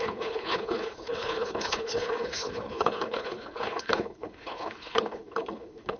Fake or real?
fake